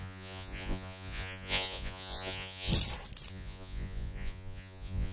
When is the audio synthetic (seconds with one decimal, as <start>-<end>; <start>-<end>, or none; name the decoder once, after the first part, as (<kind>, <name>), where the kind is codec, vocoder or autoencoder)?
0.0-2.7 (vocoder, Vocos); 3.3-5.1